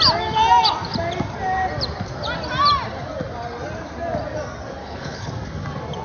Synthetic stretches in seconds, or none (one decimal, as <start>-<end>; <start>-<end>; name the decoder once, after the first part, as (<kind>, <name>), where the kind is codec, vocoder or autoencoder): 4.8-5.3 (codec, HILCodec)

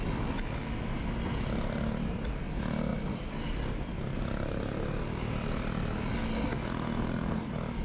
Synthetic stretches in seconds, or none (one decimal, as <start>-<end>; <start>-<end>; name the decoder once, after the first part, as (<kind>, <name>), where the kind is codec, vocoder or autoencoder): none

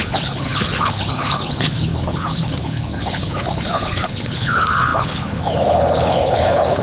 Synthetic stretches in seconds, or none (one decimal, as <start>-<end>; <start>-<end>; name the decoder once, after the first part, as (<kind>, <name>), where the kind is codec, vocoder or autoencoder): 0.0-6.8 (codec, HILCodec)

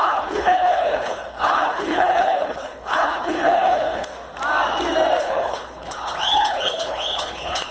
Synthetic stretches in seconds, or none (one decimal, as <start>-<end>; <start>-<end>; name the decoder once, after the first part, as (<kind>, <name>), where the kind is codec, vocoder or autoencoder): 0.0-4.1 (codec, HILCodec); 5.2-7.7

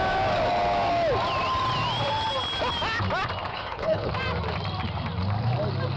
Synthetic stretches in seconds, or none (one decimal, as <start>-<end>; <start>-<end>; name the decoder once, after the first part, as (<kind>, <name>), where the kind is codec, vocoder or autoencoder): 3.5-4.1 (codec, HILCodec)